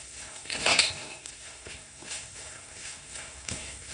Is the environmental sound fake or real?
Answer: fake